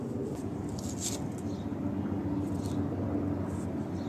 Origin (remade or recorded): recorded